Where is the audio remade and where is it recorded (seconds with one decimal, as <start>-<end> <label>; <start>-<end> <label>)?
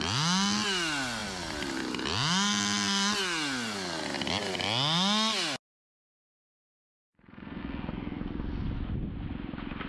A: 0.0-6.1 recorded; 6.1-7.6 remade; 7.6-9.9 recorded